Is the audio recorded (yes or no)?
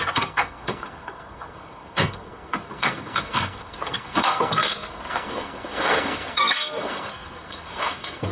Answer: no